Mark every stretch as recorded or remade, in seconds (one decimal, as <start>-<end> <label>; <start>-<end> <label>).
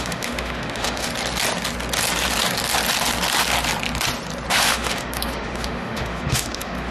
0.0-1.1 remade; 1.1-4.5 recorded; 4.5-6.9 remade